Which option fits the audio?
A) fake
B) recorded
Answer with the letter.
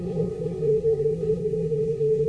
A